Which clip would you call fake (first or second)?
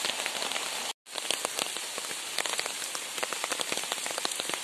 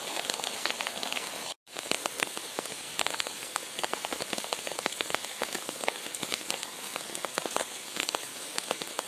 second